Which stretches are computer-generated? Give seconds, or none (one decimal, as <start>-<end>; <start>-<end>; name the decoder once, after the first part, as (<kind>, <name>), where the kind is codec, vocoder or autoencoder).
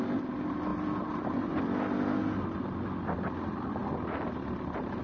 none